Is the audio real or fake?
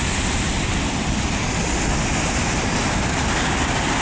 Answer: real